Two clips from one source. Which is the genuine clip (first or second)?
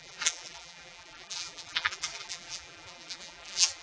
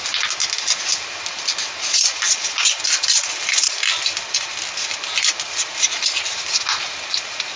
second